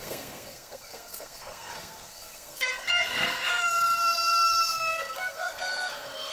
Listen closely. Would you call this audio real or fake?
fake